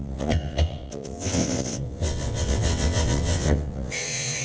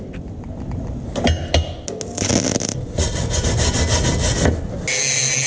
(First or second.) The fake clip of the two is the first